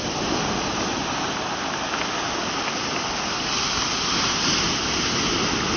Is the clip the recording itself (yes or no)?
yes